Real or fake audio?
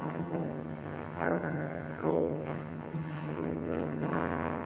fake